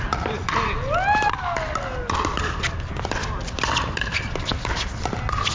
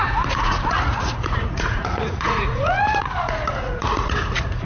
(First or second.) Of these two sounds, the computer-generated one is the second